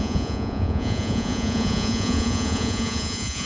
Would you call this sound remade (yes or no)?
yes